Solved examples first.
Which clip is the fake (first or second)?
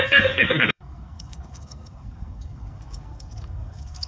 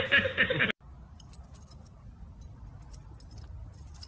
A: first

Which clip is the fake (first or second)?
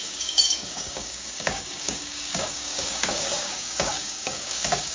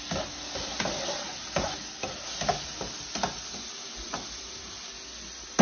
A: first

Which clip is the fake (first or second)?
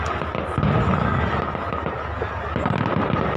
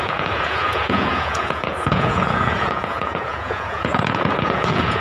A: second